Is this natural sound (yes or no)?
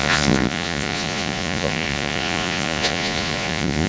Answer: no